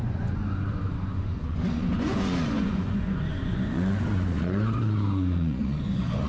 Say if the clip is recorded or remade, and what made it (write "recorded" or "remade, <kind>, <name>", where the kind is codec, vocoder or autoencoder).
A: remade, vocoder, Vocos